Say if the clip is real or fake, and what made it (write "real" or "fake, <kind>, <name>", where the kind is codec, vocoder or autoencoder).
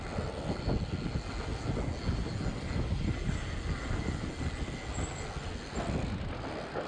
real